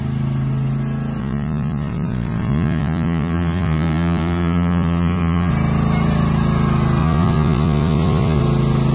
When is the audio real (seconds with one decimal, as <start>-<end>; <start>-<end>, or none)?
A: 0.0-1.2; 5.5-7.0; 8.4-8.9